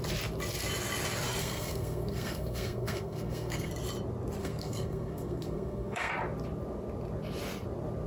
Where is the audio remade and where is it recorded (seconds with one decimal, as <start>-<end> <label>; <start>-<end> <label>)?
0.0-1.4 recorded; 1.4-3.7 remade; 3.7-4.4 recorded; 4.4-6.1 remade; 6.1-8.1 recorded